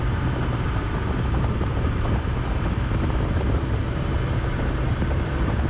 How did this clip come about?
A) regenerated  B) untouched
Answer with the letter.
A